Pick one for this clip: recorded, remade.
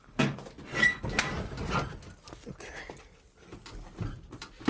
recorded